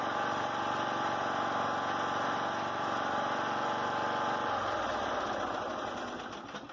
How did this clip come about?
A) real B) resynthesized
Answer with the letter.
A